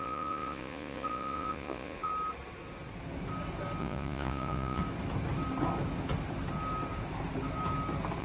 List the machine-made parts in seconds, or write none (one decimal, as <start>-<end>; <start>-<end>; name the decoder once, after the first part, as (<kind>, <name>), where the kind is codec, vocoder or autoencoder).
0.0-2.1 (vocoder, Vocos); 3.8-4.8